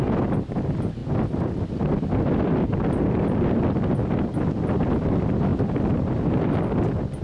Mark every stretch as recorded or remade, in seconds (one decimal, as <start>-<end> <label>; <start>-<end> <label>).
0.0-7.2 recorded

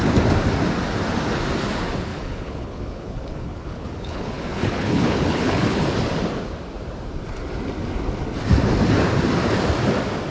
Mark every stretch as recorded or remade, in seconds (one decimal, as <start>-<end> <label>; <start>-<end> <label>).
0.0-2.1 recorded; 2.1-5.8 remade; 5.8-10.3 recorded

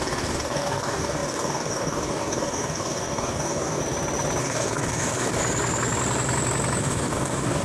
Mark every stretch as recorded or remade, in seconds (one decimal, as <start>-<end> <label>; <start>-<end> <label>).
0.0-3.8 remade; 3.8-4.4 recorded; 4.4-5.4 remade; 5.4-6.8 recorded; 6.8-7.6 remade

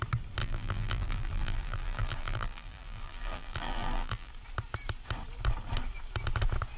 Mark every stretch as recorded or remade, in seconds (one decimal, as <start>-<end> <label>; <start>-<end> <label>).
0.0-0.4 recorded; 0.4-4.3 remade; 4.3-6.8 recorded

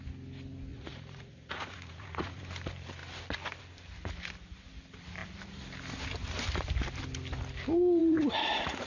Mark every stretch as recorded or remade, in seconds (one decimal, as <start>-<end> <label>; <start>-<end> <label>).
0.0-0.7 recorded; 0.7-2.4 remade; 2.4-8.0 recorded; 8.0-8.9 remade

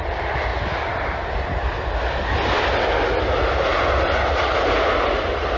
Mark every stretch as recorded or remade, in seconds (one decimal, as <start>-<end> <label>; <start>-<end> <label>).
0.0-5.6 recorded

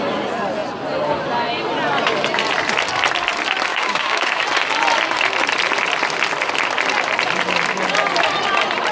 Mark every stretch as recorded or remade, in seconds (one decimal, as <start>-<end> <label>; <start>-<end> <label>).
0.0-3.7 recorded; 3.7-4.4 remade; 4.4-8.9 recorded